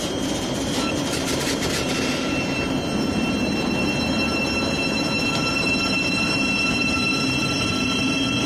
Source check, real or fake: fake